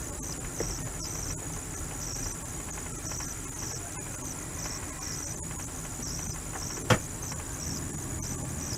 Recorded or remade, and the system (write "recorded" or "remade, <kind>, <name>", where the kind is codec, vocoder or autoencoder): recorded